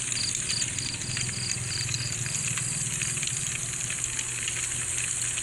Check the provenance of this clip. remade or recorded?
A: recorded